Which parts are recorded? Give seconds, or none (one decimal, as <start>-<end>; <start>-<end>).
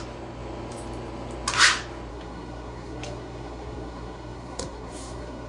0.0-2.1